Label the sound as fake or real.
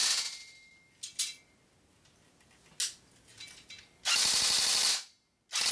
real